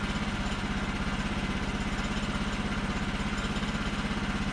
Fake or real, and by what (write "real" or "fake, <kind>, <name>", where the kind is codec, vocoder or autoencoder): real